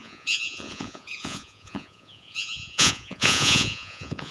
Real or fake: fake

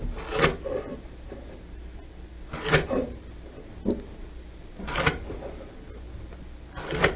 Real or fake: real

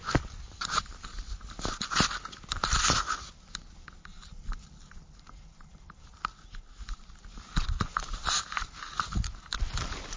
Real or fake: real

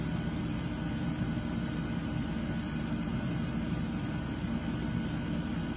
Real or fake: real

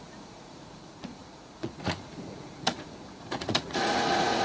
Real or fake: fake